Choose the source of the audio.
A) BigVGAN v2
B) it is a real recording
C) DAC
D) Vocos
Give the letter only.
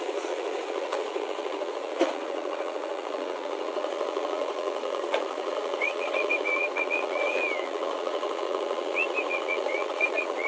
D